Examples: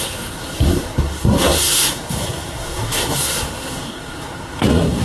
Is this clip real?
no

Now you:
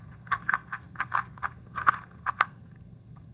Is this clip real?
no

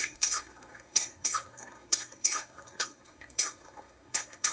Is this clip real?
no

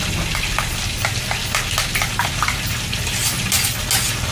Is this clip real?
yes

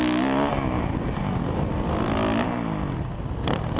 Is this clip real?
yes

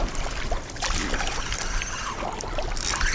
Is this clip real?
yes